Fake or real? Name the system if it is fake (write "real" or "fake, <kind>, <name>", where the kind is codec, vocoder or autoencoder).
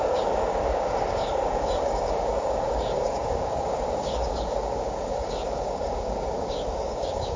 fake, codec, DAC